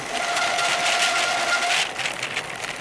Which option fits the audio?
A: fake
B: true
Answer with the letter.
B